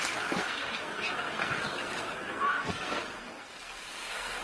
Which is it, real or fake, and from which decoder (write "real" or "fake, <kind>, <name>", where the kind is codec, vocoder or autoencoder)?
fake, codec, SNAC